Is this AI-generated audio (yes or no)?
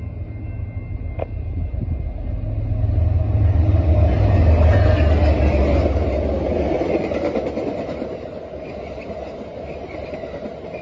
no